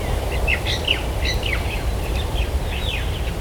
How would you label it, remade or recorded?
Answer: remade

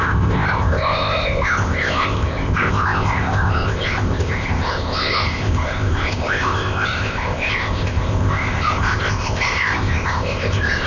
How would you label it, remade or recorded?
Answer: remade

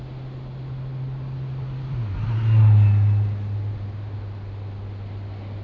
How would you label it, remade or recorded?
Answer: recorded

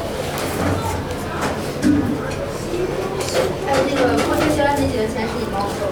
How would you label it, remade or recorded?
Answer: recorded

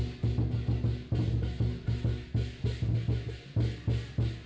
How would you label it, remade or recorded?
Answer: recorded